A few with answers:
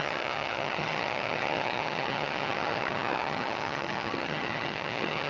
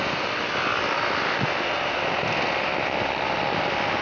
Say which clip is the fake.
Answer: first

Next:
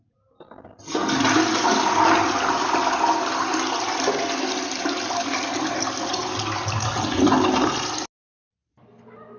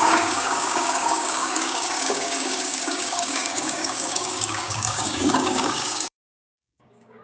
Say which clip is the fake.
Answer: second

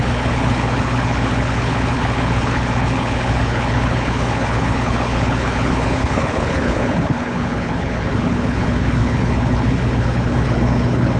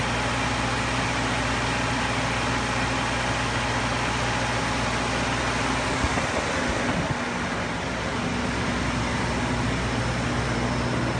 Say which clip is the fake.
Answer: first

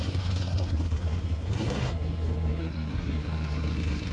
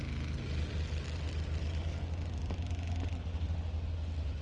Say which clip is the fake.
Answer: first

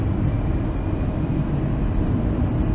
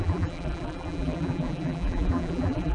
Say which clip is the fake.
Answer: second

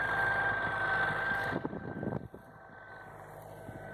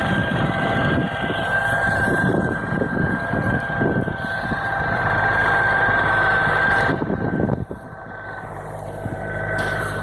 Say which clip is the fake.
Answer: second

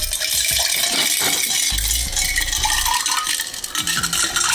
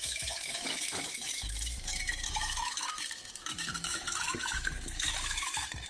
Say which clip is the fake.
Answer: second